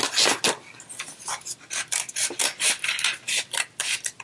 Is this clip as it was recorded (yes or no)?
yes